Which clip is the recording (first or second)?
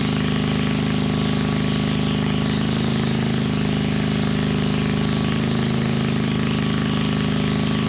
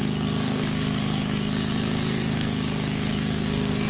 first